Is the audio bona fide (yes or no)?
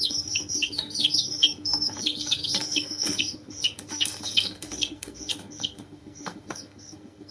no